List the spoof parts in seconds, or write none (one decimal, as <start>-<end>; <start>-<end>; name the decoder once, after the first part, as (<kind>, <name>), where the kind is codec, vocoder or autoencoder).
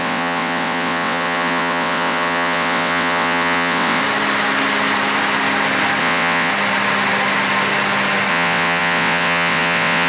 0.0-4.0 (vocoder, WaveNeXt); 6.0-6.5; 8.3-10.1